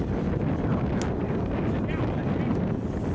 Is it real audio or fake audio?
real